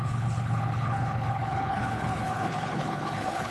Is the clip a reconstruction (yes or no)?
yes